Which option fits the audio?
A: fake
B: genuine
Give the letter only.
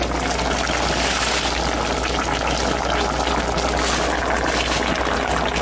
B